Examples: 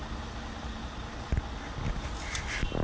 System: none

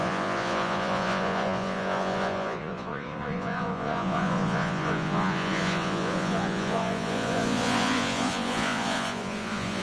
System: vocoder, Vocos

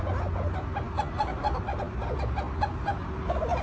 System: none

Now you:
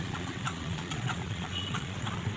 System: vocoder, Vocos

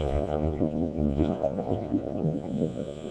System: vocoder, Vocos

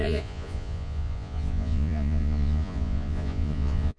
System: vocoder, Vocos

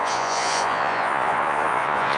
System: vocoder, Vocos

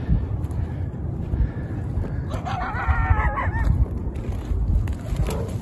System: none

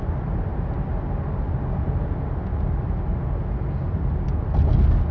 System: none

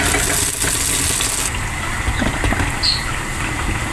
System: none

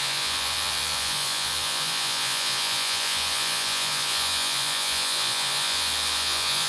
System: vocoder, Vocos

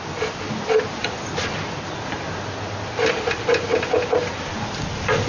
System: none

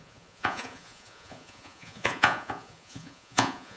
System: vocoder, Vocos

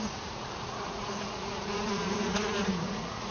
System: vocoder, Vocos